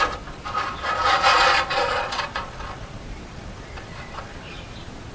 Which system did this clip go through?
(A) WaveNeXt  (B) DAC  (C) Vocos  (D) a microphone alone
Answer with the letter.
C